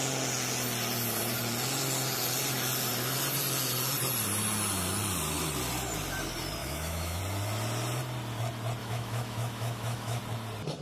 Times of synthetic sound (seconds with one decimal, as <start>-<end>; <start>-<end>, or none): 6.6-7.2; 8.8-10.2